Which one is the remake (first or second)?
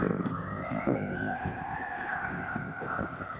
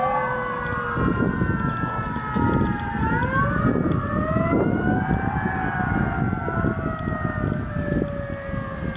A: first